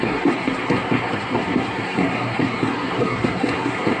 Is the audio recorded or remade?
remade